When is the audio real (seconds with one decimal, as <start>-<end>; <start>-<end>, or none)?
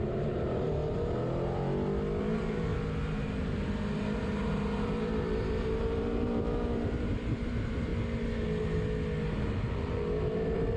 0.8-2.2; 2.7-4.8; 7.9-10.8